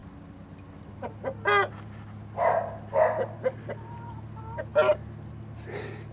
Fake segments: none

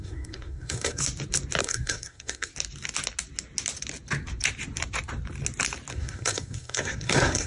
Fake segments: 0.0-1.0 (codec, SNAC); 1.6-2.5; 5.9-7.5

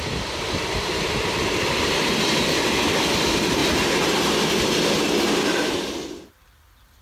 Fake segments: none

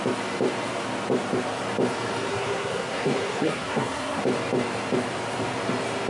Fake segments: 2.3-4.2 (codec, SNAC)

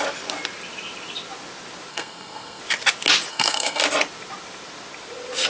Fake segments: 1.9-2.6 (codec, SNAC); 3.3-3.8